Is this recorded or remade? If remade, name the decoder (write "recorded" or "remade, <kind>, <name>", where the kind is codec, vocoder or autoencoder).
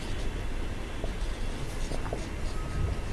recorded